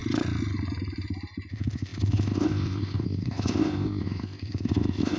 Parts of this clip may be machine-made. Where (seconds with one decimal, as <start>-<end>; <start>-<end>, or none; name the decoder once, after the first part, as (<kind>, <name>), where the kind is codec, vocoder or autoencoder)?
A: 1.5-5.2 (codec, ZipCodec)